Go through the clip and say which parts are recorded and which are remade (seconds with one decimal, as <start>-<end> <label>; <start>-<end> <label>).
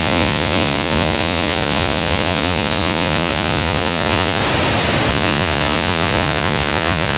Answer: 0.0-4.4 remade; 4.4-5.1 recorded; 5.1-7.2 remade